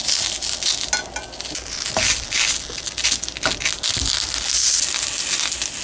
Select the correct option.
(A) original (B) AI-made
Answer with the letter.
A